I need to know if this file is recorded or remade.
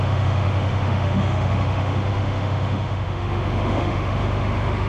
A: remade